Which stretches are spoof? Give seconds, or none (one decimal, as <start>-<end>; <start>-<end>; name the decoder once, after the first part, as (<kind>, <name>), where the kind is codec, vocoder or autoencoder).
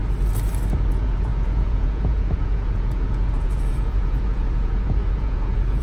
0.9-5.8 (vocoder, Vocos)